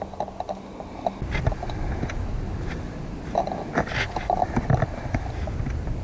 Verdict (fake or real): real